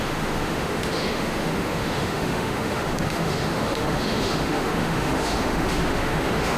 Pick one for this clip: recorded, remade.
remade